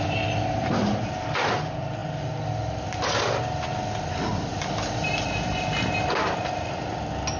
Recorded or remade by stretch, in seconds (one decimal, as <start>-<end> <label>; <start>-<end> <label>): 0.0-7.4 recorded